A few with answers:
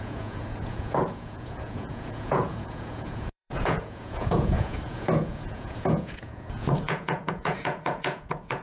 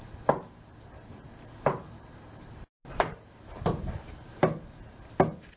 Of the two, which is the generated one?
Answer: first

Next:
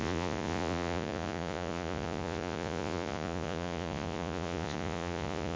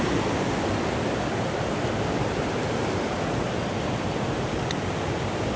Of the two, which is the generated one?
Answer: first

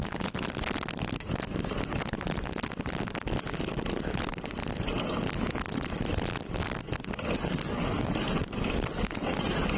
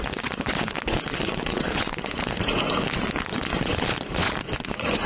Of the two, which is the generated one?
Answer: second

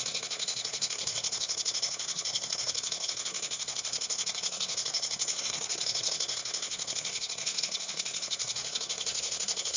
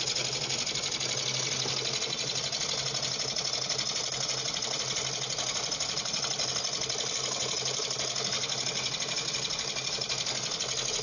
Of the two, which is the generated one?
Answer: first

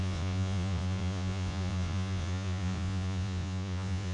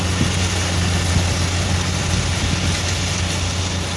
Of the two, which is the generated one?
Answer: first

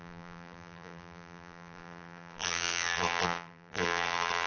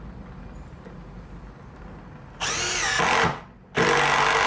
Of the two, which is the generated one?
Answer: first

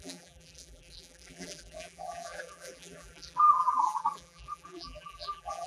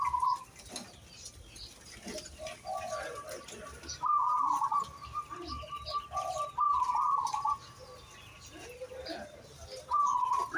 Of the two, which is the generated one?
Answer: first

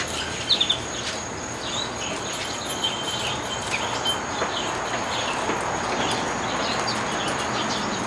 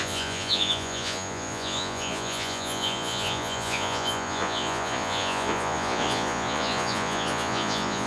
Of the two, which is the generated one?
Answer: second